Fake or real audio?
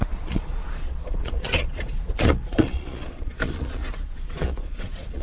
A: fake